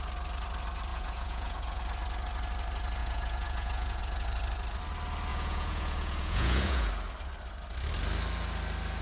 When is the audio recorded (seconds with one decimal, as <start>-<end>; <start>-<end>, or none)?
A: 0.0-0.9; 1.8-3.0; 4.0-5.3; 6.9-9.0